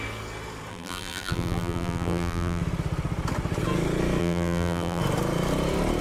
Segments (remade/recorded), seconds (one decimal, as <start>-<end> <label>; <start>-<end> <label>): 0.0-0.7 recorded; 0.7-2.6 remade; 2.6-4.2 recorded; 4.2-5.0 remade; 5.0-6.0 recorded